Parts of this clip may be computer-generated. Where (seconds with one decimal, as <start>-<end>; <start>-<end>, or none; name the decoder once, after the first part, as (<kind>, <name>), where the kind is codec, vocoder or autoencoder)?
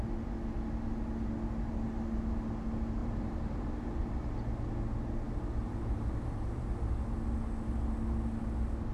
3.0-4.4 (vocoder, BigVGAN v2); 5.6-6.9